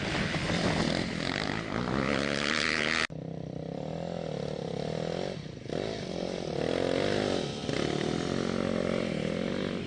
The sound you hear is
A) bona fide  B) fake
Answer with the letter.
A